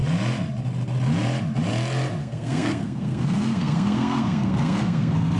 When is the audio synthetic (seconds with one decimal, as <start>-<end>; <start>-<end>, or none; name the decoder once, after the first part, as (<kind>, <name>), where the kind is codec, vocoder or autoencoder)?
2.2-5.4 (codec, SNAC)